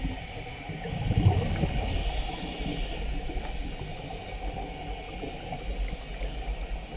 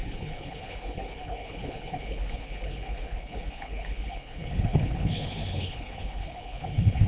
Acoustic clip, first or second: first